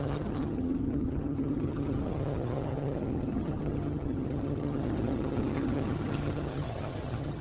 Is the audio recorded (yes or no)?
no